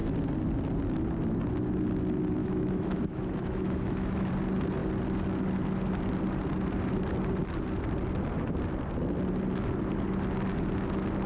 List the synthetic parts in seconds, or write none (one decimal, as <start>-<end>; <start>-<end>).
2.4-4.3